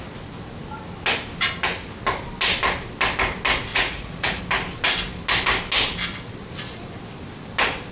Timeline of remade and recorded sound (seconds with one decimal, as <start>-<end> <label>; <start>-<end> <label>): 0.0-3.7 recorded; 3.7-4.4 remade; 4.4-7.9 recorded